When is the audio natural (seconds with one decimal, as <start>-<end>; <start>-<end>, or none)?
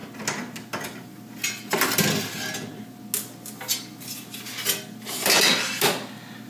0.0-6.5